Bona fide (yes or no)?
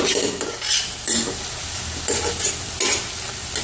yes